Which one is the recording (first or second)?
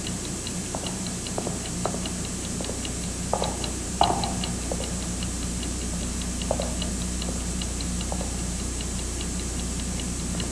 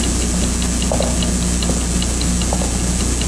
second